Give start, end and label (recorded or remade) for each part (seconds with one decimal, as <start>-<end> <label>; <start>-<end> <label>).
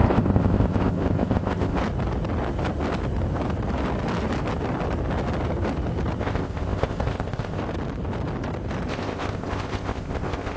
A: 0.0-1.8 remade; 1.8-6.2 recorded; 6.2-7.6 remade; 7.6-8.9 recorded; 8.9-10.6 remade